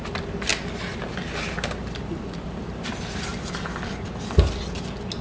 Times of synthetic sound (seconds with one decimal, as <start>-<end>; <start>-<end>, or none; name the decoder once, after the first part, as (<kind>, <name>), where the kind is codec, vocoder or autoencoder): 3.3-4.8 (vocoder, BigVGAN v2)